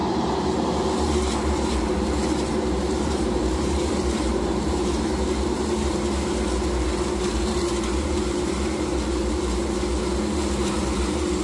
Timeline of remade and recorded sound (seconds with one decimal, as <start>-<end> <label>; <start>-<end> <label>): 0.0-5.0 remade; 5.0-7.3 recorded; 7.3-8.5 remade; 8.5-11.4 recorded